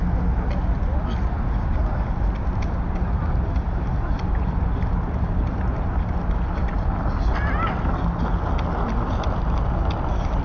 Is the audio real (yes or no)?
yes